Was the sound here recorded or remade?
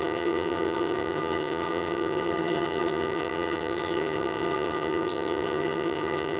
remade